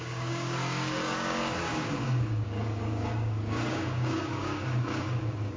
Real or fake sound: fake